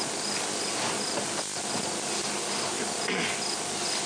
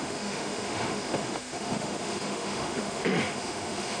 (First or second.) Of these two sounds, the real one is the first